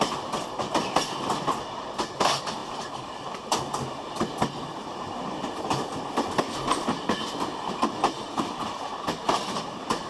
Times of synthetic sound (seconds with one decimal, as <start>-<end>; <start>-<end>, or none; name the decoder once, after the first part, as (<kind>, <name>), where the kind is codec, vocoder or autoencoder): none